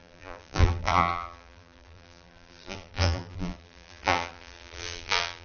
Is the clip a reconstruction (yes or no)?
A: yes